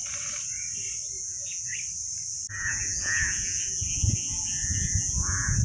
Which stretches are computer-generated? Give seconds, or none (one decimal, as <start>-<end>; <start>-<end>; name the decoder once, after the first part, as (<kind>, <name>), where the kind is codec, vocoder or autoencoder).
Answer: 1.2-1.7 (vocoder, Vocos); 2.5-5.6